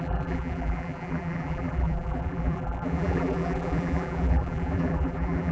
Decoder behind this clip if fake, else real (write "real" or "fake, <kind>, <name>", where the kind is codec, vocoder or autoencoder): fake, vocoder, BigVGAN v2